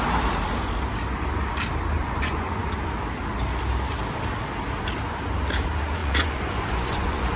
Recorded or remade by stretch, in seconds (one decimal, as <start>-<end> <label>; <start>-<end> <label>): 0.0-2.0 recorded; 2.0-2.7 remade; 2.7-6.0 recorded; 6.0-7.4 remade

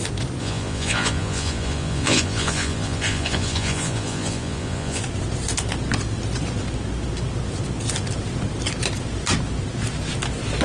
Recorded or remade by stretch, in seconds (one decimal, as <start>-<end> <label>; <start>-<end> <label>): 0.0-0.4 recorded; 0.4-5.0 remade; 5.0-10.6 recorded